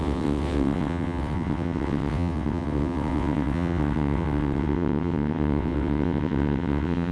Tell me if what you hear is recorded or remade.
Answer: remade